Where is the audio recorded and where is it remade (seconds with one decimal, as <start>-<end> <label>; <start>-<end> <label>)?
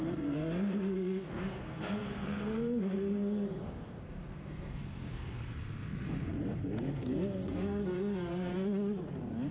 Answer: 0.0-8.5 remade; 8.5-9.5 recorded